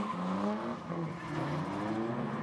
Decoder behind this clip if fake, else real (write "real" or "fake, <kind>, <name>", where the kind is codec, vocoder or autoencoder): real